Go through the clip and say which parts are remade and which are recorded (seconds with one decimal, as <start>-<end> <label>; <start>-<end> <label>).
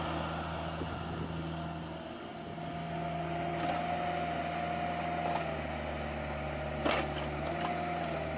0.0-8.4 recorded